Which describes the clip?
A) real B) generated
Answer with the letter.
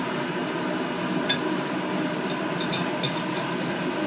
A